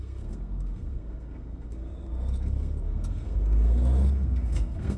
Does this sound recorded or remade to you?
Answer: remade